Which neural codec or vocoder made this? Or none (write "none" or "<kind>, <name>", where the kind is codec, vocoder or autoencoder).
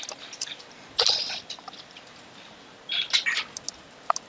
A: none